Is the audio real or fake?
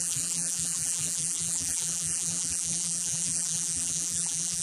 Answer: fake